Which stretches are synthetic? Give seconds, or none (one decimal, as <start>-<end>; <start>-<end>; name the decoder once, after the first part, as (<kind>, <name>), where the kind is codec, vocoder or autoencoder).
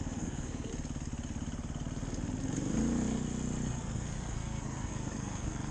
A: 0.0-0.7 (codec, SNAC); 3.7-5.7